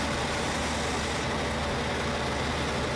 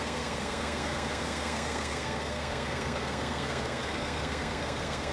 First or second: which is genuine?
first